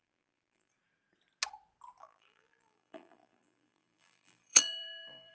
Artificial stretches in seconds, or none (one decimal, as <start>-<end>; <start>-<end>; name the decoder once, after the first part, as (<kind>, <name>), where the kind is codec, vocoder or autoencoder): 0.0-0.7 (vocoder, BigVGAN v2); 2.0-5.3